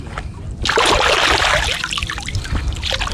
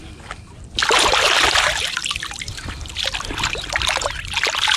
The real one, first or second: first